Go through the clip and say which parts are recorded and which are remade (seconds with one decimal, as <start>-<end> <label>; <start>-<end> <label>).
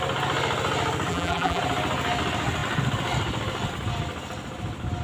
0.0-1.1 recorded; 1.1-1.6 remade; 1.6-5.0 recorded